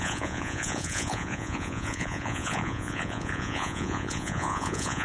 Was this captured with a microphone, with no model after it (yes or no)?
no